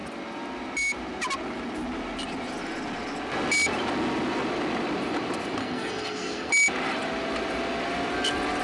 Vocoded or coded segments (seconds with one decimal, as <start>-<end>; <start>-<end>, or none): 5.6-6.5